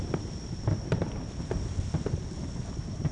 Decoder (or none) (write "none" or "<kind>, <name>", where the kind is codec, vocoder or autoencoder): none